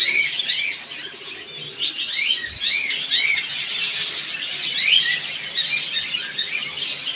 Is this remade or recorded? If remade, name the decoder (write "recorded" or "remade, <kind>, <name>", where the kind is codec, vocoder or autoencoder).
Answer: recorded